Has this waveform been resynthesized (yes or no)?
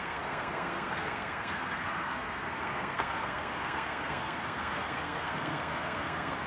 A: yes